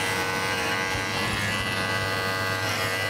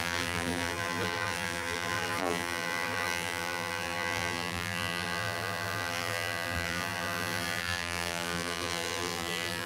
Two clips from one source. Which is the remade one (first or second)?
second